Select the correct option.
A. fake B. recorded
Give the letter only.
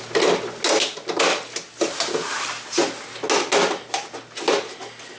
B